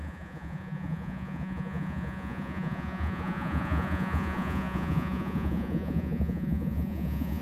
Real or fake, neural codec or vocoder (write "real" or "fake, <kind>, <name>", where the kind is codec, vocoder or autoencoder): fake, vocoder, Vocos